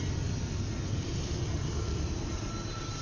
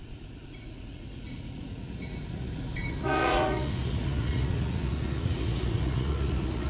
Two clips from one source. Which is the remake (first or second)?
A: second